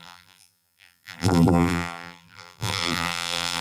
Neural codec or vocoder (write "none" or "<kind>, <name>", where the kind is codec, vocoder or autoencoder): vocoder, BigVGAN v2